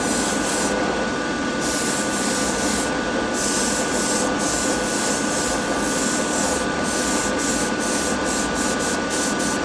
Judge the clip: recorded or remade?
recorded